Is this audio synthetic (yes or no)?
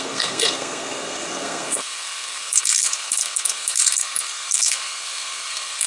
yes